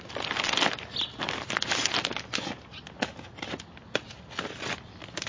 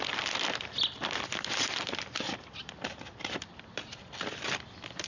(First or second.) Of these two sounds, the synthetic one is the second